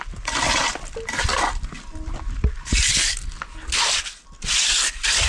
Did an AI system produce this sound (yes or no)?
no